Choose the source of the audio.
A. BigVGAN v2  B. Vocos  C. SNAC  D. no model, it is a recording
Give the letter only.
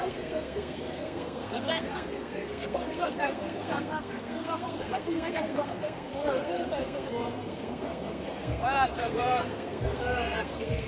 C